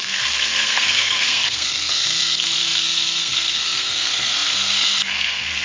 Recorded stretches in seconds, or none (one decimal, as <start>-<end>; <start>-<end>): none